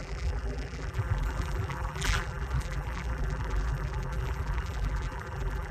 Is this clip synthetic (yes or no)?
yes